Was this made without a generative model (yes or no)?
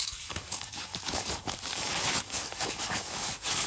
no